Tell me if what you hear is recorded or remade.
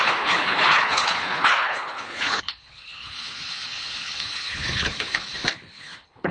remade